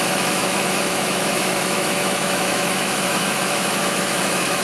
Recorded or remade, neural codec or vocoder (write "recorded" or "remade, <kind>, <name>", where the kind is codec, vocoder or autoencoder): remade, autoencoder, DAC-VAE